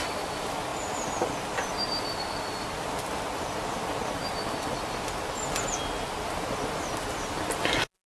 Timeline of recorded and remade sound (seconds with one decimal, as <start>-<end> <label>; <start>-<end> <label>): 0.0-8.1 recorded